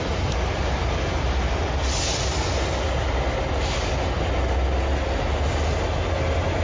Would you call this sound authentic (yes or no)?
yes